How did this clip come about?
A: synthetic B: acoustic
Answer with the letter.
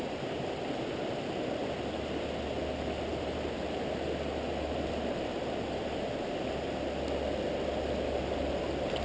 B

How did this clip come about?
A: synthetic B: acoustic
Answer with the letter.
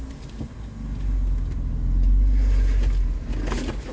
B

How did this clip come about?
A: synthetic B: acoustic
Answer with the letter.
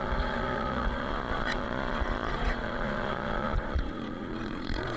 A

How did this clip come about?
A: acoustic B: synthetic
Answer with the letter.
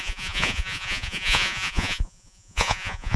B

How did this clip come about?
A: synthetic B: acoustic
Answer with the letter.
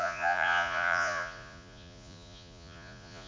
A